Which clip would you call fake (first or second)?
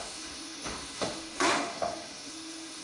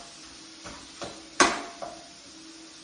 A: first